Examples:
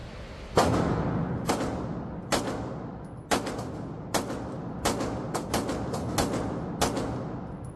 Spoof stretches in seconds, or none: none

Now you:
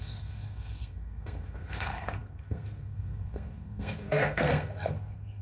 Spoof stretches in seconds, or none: 0.0-5.4 (codec, SNAC)

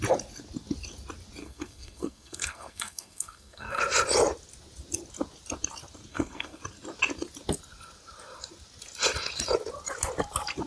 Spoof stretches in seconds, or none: 1.4-3.8 (codec, SNAC); 6.1-6.6

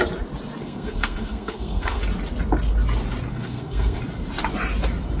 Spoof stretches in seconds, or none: 0.6-2.0 (codec, SNAC); 3.3-4.0

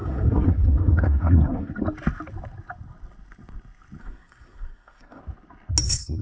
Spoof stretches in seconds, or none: 0.0-1.7 (codec, SNAC); 4.0-5.2; 5.8-6.2

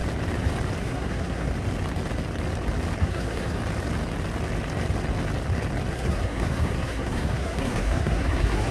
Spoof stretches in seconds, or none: 0.8-1.5 (codec, SNAC); 3.0-3.6; 5.9-8.7

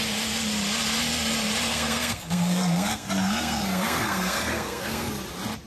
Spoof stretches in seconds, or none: 1.7-5.1 (codec, SNAC)

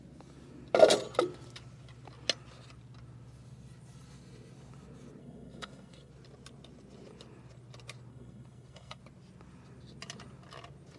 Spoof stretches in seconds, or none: 5.2-6.1 (codec, SNAC); 8.1-9.0